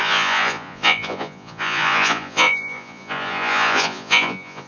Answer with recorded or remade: remade